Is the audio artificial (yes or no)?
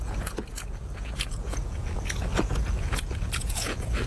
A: yes